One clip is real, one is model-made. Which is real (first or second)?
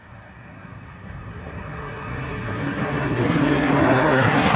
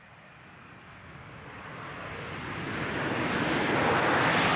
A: second